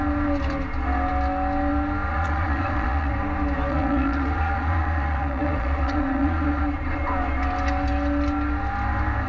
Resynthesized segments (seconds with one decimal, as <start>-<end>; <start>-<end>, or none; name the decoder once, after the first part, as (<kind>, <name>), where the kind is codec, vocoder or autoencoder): 2.1-3.1 (vocoder, Vocos); 3.7-6.6